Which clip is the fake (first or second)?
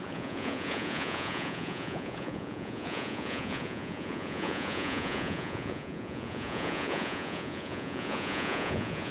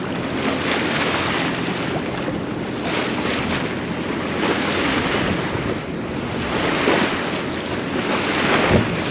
first